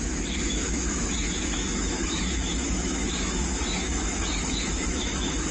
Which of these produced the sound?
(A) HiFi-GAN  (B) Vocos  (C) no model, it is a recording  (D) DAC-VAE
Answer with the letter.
D